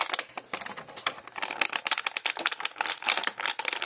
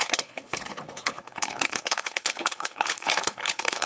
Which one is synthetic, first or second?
second